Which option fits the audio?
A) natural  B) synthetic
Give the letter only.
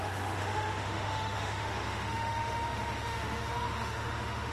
B